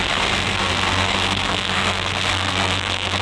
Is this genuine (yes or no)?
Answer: no